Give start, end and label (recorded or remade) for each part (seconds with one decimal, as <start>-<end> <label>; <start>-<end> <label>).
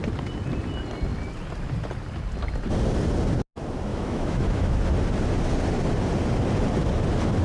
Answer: 0.0-3.9 recorded; 3.9-4.8 remade; 4.8-7.4 recorded